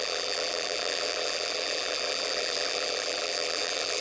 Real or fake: fake